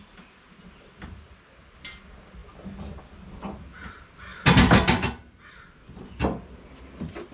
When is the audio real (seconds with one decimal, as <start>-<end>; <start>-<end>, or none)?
0.0-7.3

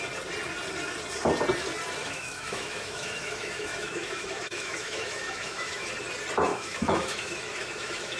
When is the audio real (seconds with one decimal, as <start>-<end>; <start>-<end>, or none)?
0.0-2.0; 5.9-6.5